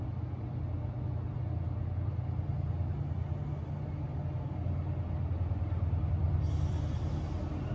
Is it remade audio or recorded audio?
recorded